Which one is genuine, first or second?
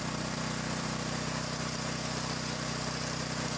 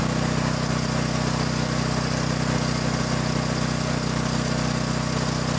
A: second